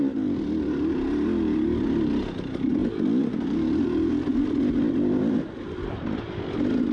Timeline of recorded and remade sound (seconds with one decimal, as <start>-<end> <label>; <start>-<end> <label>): 0.0-6.9 recorded

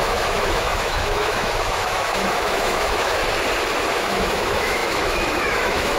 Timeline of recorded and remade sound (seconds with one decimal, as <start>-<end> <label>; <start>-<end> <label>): 0.0-3.2 remade; 3.2-3.9 recorded; 3.9-6.0 remade

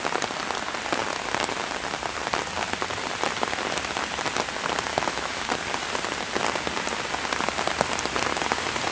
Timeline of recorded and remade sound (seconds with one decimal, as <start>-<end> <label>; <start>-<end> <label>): 0.0-4.9 recorded; 4.9-5.5 remade; 5.5-8.9 recorded

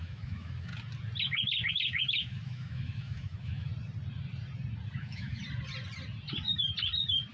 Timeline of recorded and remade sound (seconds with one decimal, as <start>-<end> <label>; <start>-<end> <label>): 0.0-0.7 remade; 0.7-1.7 recorded; 1.7-3.7 remade; 3.7-5.0 recorded; 5.0-5.4 remade; 5.4-7.3 recorded

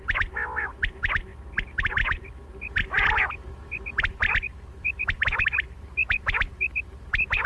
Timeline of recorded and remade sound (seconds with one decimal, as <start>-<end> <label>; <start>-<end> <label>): 0.0-7.5 recorded

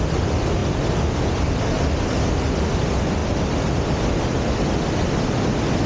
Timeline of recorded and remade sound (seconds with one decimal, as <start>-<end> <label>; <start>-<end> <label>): 0.0-5.9 recorded

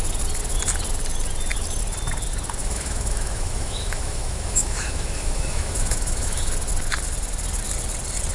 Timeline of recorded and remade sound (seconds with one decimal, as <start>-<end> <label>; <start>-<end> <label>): 0.0-2.6 recorded; 2.6-6.5 remade; 6.5-8.3 recorded

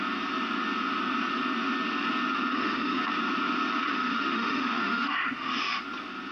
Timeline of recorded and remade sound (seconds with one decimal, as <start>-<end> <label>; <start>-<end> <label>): 0.0-2.5 recorded; 2.5-3.0 remade; 3.0-3.9 recorded; 3.9-5.8 remade; 5.8-6.3 recorded